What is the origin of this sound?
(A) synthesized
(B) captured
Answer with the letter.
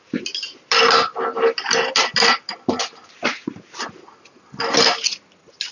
B